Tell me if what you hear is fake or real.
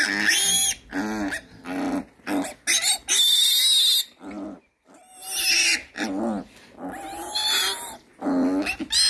real